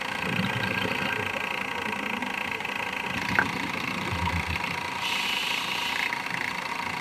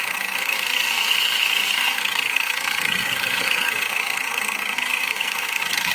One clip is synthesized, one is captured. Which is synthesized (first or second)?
second